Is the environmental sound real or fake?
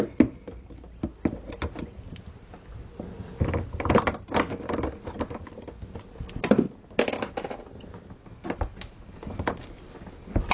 real